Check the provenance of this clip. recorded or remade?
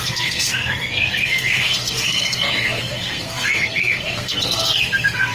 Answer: remade